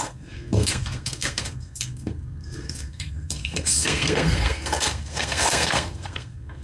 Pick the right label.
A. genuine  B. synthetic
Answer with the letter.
B